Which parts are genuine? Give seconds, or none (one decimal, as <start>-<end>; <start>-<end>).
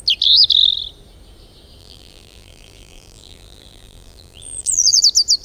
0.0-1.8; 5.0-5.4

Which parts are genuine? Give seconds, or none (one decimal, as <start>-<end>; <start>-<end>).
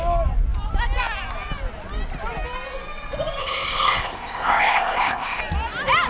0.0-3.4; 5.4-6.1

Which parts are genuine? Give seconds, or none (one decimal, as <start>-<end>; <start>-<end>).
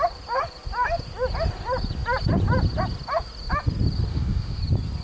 0.0-4.1; 4.6-5.0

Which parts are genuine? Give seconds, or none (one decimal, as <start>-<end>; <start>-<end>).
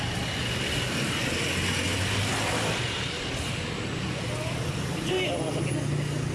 0.0-0.4; 1.3-1.9; 5.7-6.3